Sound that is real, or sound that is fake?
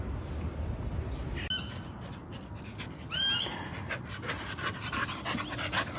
real